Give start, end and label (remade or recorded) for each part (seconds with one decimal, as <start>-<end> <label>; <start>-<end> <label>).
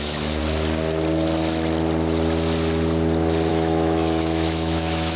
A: 0.0-0.4 remade; 0.4-3.5 recorded; 3.5-5.2 remade